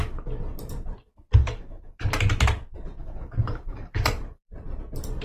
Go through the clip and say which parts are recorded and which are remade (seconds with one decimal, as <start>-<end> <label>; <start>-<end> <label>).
0.0-1.4 recorded; 1.4-2.0 remade; 2.0-3.0 recorded; 3.0-4.5 remade; 4.5-5.2 recorded